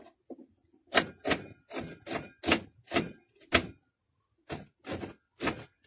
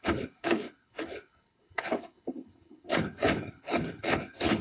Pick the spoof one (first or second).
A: second